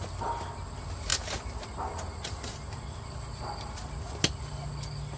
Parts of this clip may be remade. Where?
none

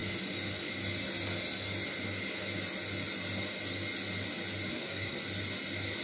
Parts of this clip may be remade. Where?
4.7-5.2